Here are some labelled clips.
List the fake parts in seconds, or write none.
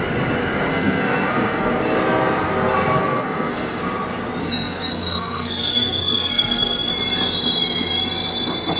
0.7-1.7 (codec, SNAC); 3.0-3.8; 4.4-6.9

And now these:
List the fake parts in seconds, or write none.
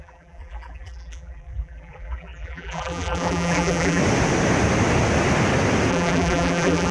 0.0-4.0 (vocoder, BigVGAN v2); 5.9-6.9